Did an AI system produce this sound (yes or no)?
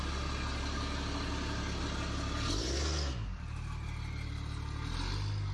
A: no